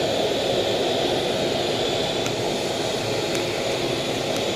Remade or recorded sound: recorded